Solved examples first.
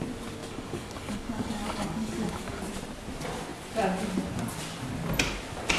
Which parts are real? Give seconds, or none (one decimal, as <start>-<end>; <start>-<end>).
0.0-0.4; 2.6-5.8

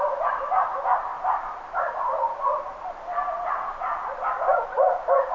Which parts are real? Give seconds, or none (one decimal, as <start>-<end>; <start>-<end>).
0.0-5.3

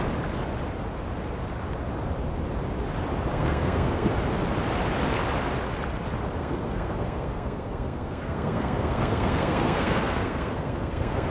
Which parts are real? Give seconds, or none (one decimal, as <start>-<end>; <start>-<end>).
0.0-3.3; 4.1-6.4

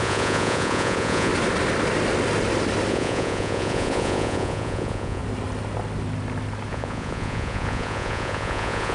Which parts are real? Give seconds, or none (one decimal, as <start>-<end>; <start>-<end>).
1.3-2.9; 5.2-6.7

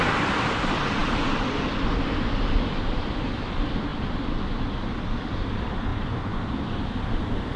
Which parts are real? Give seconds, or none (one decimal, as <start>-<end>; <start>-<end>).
0.0-5.9; 6.4-7.6